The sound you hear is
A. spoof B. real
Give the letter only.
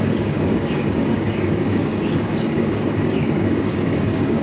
A